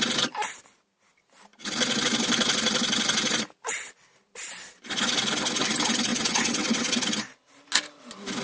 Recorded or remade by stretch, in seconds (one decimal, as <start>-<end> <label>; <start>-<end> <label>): 0.0-6.1 recorded; 6.1-6.9 remade; 6.9-8.4 recorded